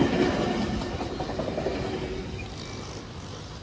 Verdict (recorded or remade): recorded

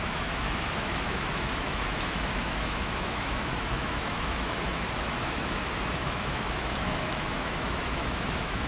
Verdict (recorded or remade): remade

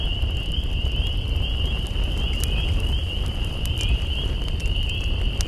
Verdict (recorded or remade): recorded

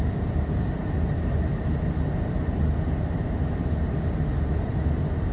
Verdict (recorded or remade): recorded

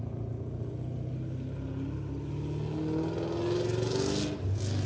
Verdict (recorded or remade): recorded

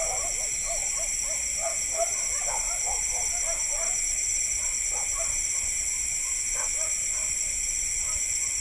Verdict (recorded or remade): recorded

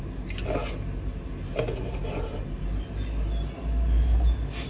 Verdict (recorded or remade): recorded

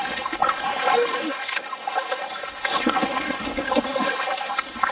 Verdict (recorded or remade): remade